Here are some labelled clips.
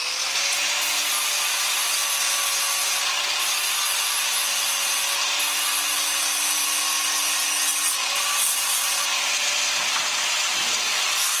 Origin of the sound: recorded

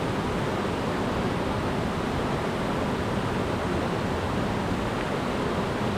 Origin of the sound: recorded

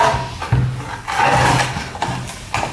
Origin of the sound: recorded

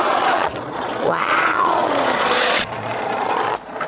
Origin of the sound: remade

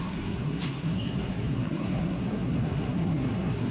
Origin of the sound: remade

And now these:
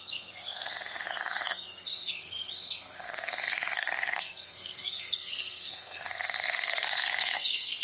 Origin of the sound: remade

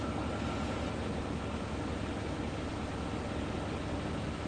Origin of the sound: recorded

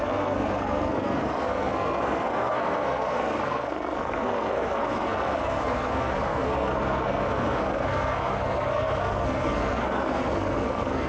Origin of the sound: remade